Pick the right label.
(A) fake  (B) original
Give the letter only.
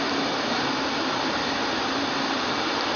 B